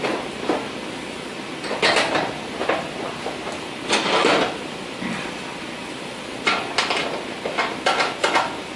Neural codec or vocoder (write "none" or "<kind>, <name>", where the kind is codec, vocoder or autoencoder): none